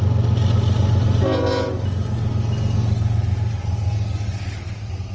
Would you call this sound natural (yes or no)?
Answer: yes